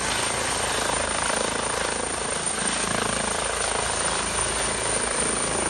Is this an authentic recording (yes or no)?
yes